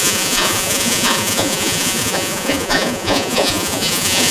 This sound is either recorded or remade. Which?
remade